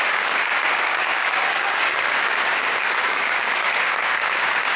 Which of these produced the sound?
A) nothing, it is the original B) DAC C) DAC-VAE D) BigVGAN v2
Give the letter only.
B